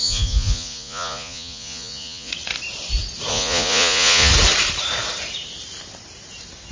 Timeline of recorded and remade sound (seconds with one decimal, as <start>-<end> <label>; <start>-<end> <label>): 0.0-2.3 remade; 2.3-3.3 recorded; 3.3-4.3 remade; 4.3-6.7 recorded